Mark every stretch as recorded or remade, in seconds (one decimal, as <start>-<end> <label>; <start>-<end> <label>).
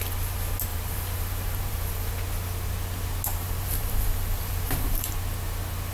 0.0-0.7 recorded; 0.7-2.1 remade; 2.1-3.3 recorded; 3.3-5.1 remade; 5.1-5.9 recorded